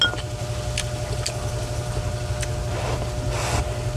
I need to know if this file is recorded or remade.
recorded